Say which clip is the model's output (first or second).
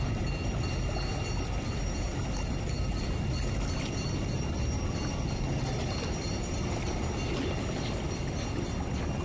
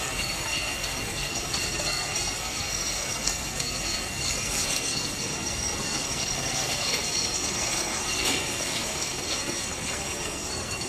second